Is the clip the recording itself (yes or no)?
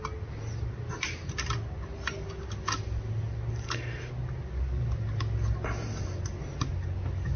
yes